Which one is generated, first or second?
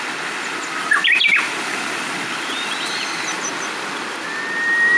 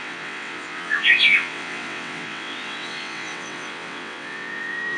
second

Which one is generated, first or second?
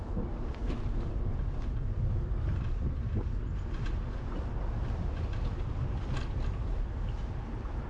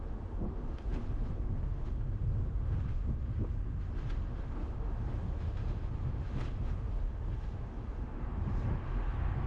second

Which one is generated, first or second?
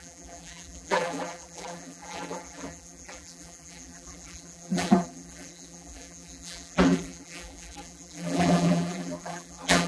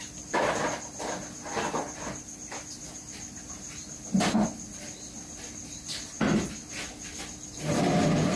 first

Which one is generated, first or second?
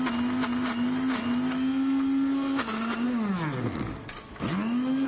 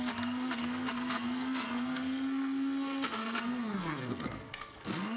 second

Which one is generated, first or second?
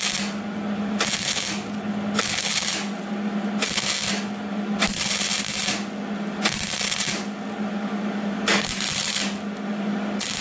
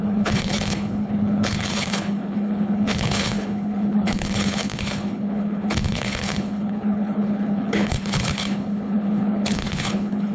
second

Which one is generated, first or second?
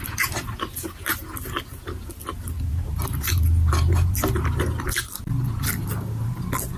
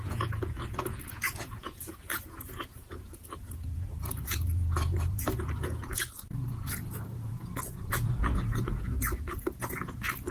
second